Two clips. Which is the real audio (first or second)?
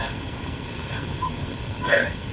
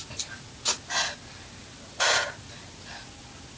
second